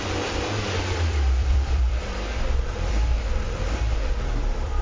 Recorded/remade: remade